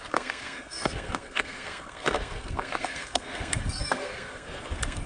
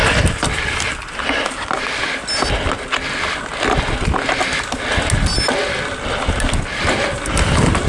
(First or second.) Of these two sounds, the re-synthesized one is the first